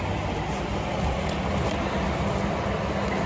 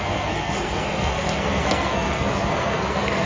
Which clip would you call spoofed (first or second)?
second